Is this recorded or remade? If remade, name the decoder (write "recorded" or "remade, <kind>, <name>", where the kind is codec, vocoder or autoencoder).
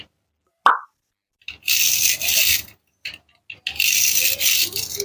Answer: recorded